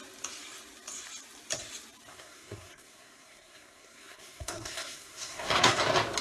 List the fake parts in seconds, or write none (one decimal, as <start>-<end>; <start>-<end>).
2.1-5.8